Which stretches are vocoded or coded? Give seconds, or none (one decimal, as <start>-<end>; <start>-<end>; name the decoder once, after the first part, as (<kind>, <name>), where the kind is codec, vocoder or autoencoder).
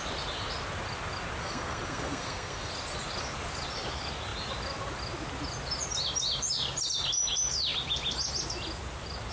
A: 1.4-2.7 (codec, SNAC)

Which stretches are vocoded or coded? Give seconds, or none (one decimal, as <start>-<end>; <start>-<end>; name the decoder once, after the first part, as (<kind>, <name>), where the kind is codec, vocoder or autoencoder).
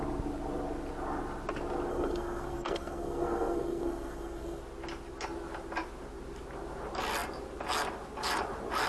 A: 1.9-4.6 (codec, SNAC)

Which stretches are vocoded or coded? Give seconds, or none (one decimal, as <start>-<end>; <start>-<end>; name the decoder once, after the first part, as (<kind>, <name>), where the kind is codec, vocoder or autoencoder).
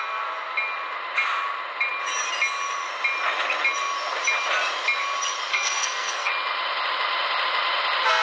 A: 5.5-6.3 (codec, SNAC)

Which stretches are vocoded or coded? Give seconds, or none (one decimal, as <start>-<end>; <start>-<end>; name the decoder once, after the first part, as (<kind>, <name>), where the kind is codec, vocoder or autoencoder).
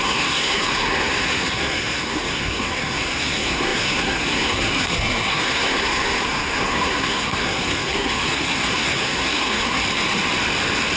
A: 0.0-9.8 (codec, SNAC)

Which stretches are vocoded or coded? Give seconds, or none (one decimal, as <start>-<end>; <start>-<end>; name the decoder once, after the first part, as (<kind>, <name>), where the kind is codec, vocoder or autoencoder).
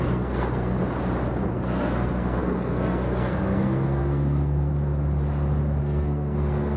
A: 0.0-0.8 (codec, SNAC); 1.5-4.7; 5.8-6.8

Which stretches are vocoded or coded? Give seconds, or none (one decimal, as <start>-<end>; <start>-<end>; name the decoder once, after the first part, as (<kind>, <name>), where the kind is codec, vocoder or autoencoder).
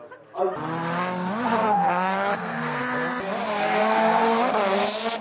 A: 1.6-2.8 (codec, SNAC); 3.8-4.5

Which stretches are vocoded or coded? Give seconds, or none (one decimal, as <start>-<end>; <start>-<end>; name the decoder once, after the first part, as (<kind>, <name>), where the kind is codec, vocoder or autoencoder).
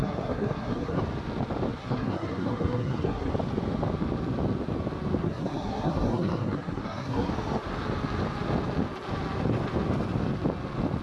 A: 0.0-1.0 (codec, SNAC); 1.8-3.3; 5.2-7.3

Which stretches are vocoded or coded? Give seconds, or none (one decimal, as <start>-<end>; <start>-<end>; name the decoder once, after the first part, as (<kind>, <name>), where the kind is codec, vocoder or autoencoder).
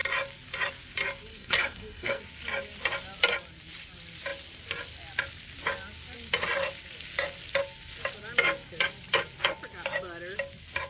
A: 1.3-2.2 (codec, SNAC)